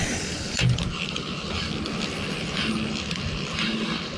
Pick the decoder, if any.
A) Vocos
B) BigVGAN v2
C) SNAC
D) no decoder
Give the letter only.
D